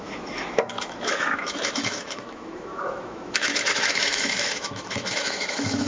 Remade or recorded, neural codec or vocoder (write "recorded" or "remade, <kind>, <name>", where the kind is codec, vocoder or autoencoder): remade, autoencoder, DAC-VAE